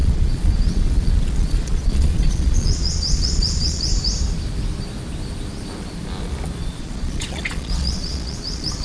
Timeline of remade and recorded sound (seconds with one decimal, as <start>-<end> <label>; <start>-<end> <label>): 0.0-3.9 remade; 3.9-6.8 recorded; 6.8-8.8 remade